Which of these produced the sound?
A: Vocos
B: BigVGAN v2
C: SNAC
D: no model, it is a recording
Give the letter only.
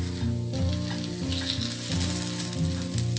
D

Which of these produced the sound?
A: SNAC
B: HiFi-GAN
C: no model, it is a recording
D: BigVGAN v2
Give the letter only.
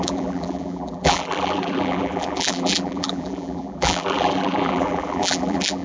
D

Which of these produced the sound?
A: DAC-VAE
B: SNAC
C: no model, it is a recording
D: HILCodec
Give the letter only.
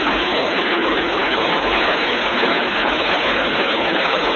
D